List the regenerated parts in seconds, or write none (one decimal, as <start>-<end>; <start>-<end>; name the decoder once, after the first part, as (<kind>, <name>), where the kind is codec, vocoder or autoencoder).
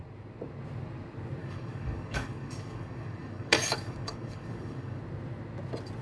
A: 1.4-5.0 (codec, DAC)